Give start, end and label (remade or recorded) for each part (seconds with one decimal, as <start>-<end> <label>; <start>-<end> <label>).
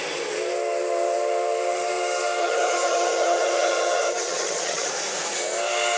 0.0-2.4 recorded; 2.4-4.9 remade; 4.9-6.0 recorded